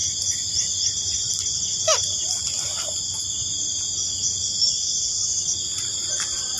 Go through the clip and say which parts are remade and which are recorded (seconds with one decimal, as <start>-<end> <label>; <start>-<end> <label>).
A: 0.0-6.6 recorded